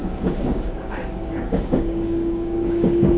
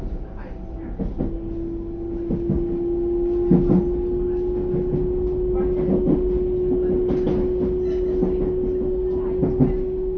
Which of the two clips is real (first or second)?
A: second